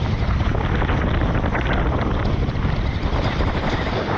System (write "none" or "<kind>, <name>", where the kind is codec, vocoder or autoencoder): none